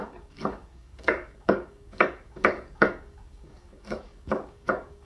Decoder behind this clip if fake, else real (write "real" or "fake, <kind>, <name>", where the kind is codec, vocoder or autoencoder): fake, codec, DAC